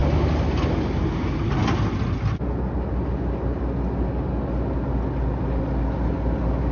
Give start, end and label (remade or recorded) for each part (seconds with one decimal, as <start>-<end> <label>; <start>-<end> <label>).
0.0-6.7 recorded